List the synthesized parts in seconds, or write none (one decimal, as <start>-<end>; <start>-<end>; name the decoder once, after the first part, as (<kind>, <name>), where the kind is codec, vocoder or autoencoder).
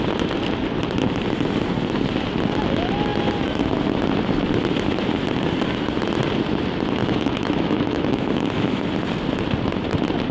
7.0-8.8 (autoencoder, DAC-VAE)